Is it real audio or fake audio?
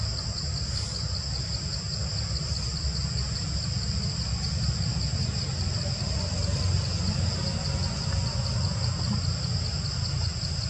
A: real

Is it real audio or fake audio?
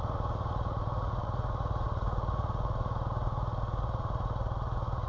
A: fake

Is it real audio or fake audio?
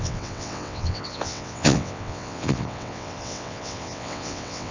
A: fake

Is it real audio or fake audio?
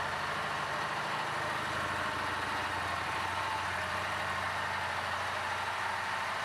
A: real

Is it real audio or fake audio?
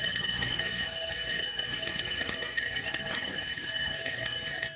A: fake